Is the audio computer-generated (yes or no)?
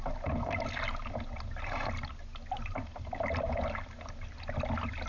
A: no